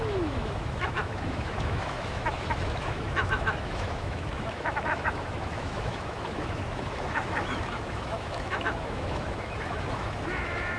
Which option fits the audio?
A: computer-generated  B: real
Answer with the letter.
A